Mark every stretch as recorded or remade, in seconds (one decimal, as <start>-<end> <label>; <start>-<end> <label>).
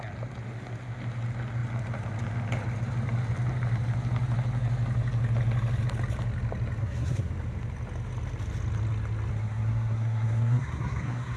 0.0-6.8 recorded; 6.8-7.3 remade; 7.3-9.3 recorded; 9.3-11.4 remade